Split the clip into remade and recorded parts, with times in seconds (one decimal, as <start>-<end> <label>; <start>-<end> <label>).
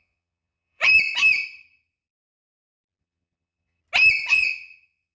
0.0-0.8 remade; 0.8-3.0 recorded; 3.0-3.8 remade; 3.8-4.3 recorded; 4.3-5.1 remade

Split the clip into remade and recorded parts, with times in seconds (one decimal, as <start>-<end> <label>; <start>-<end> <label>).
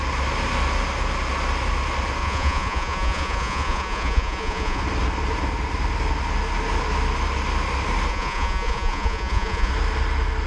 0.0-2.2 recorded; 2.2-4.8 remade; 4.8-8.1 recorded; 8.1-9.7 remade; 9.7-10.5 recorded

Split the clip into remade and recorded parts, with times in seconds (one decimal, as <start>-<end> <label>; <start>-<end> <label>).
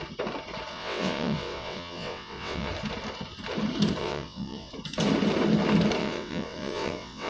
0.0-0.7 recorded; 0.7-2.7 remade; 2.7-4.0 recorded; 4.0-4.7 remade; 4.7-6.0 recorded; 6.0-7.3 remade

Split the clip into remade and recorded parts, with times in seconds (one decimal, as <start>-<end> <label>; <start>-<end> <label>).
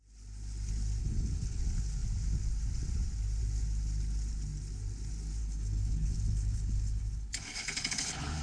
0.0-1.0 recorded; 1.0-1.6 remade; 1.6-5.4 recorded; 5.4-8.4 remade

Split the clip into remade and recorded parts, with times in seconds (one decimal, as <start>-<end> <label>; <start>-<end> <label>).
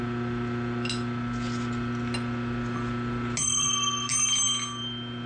0.0-5.3 recorded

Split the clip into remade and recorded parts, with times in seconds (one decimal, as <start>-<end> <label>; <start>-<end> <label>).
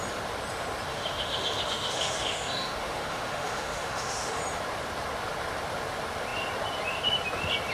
0.0-0.9 recorded; 0.9-4.4 remade; 4.4-7.7 recorded